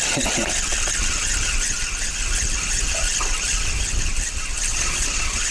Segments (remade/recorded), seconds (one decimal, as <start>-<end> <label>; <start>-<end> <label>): 0.0-4.7 recorded; 4.7-5.5 remade